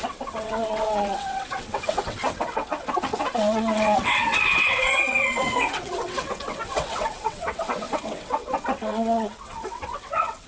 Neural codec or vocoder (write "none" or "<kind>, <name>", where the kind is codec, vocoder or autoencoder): vocoder, WaveNeXt